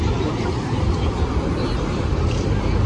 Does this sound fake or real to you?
fake